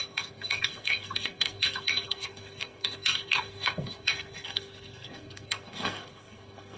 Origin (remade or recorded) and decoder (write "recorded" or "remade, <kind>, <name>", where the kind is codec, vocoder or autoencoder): remade, codec, SNAC